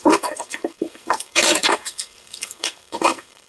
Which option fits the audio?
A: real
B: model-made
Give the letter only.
B